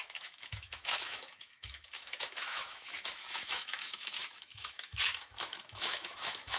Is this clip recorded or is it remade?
remade